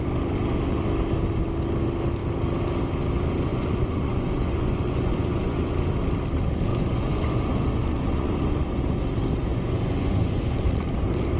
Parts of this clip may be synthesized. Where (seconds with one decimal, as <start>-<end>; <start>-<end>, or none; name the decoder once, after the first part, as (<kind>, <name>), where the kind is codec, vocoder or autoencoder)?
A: 3.5-5.7 (vocoder, Vocos); 6.7-9.0; 9.5-10.7

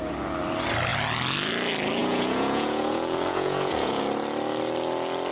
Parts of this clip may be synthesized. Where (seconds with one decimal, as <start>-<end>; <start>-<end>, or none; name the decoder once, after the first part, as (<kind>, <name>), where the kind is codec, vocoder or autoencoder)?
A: 2.0-4.0 (vocoder, Vocos)